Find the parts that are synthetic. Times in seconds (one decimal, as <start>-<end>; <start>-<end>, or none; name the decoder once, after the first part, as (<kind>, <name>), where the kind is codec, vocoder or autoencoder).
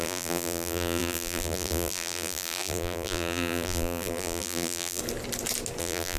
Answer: 0.0-5.0 (vocoder, BigVGAN v2); 5.8-6.2